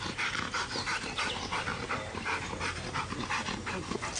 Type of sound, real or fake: real